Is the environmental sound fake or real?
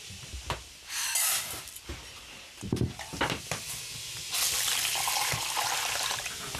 real